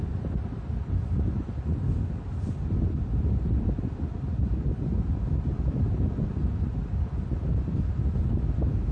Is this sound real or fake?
real